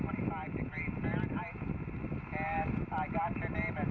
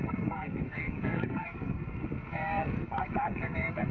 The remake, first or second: second